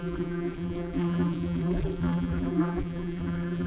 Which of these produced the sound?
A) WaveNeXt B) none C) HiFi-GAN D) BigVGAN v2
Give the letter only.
D